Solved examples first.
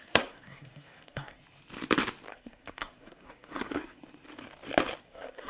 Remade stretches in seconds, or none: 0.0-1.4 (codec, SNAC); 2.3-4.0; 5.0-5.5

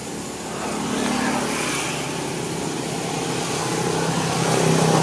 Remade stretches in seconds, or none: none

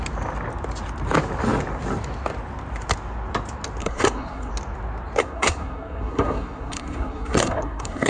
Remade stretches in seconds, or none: 3.8-4.5 (codec, SNAC); 5.2-8.1

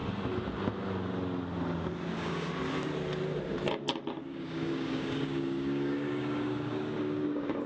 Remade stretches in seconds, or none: 2.1-2.5 (codec, DAC); 4.2-7.7

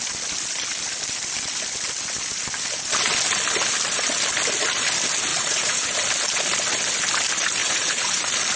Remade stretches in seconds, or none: 5.3-6.0 (vocoder, Vocos); 7.6-8.2

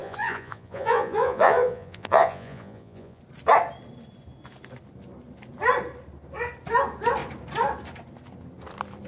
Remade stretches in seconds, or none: 0.0-3.2 (vocoder, Vocos)